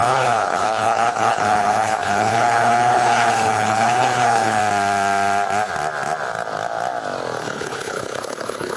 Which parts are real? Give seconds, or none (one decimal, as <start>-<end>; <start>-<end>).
4.6-7.4